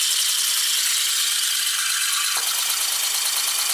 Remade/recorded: recorded